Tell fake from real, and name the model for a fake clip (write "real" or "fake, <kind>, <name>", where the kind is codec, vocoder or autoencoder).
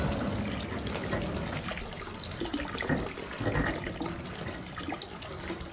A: real